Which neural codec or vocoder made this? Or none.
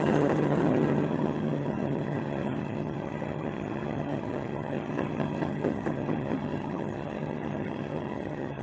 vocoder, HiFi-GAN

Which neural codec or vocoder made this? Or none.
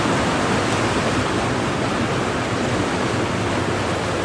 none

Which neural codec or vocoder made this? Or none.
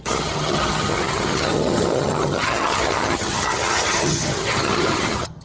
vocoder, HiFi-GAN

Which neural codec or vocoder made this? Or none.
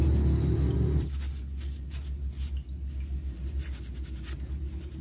none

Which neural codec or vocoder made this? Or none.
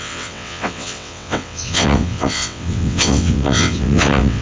vocoder, WaveNeXt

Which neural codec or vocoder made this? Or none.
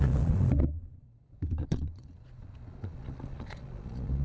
vocoder, Vocos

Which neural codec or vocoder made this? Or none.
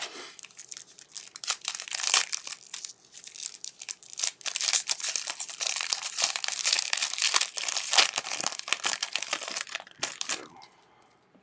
vocoder, BigVGAN v2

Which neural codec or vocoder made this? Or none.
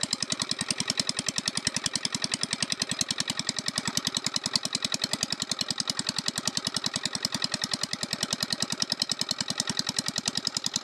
none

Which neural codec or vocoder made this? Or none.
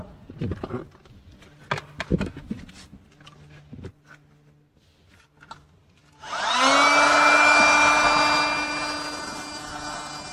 none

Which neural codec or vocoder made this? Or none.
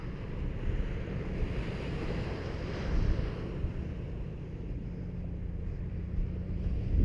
vocoder, BigVGAN v2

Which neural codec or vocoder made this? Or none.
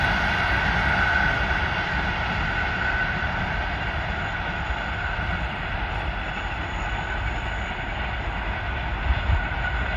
none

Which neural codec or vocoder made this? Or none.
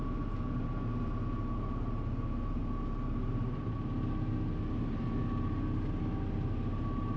none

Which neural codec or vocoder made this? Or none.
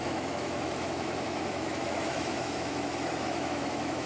autoencoder, DAC-VAE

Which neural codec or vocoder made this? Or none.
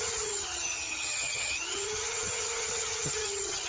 vocoder, HiFi-GAN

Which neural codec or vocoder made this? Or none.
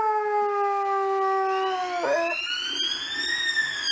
none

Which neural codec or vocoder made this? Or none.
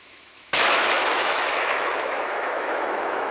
autoencoder, DAC-VAE